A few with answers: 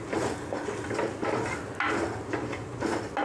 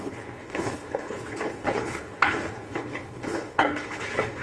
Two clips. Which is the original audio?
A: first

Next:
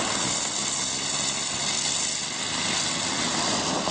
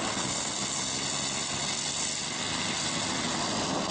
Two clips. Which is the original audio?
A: second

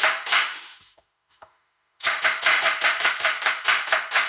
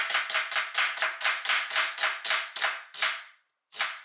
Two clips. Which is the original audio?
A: second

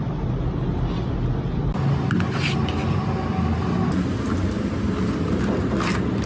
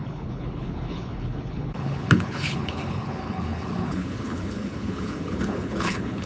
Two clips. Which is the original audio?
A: first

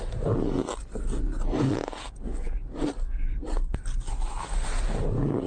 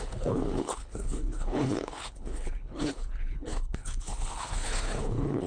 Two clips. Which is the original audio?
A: first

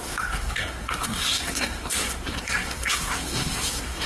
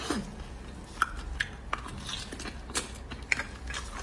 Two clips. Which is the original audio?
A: second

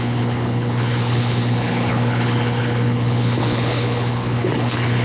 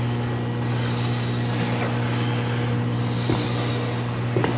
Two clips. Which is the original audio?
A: second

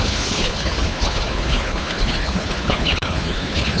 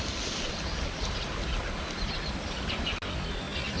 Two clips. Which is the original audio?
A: second